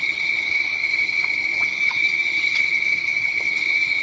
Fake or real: fake